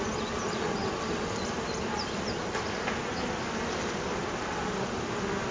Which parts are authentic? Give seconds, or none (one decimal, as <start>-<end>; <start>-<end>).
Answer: 0.0-5.5